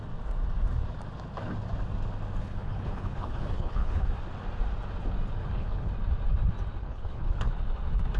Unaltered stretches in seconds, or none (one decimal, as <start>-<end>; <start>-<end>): 0.0-2.4; 4.1-5.4; 5.9-6.8; 7.5-8.2